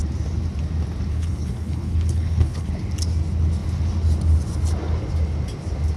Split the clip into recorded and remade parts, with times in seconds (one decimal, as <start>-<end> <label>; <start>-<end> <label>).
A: 0.0-1.1 recorded; 1.1-2.7 remade; 2.7-6.0 recorded